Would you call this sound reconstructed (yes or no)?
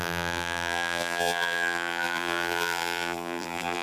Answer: yes